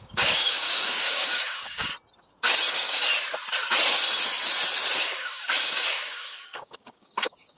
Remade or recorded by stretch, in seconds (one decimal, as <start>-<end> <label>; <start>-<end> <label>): 0.0-1.9 remade; 1.9-2.7 recorded; 2.7-3.1 remade; 3.1-5.0 recorded; 5.0-7.6 remade